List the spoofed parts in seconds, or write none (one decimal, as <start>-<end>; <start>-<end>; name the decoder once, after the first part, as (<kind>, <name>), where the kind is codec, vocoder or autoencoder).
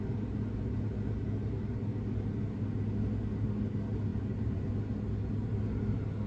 4.1-4.7 (vocoder, BigVGAN v2)